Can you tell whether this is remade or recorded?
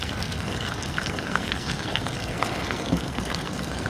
remade